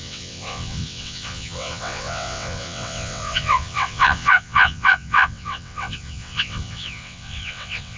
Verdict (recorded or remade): remade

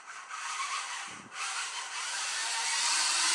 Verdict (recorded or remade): remade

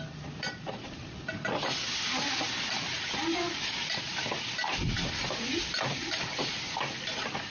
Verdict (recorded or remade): recorded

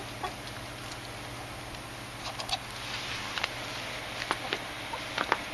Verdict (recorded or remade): recorded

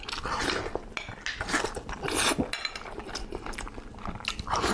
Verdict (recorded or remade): recorded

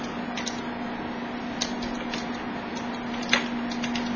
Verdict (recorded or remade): recorded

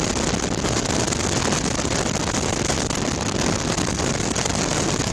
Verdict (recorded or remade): recorded